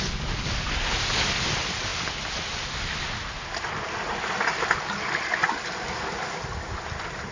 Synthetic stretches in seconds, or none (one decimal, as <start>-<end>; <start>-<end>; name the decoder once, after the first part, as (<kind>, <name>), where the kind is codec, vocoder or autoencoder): none